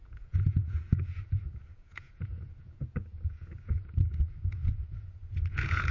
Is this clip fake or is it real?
fake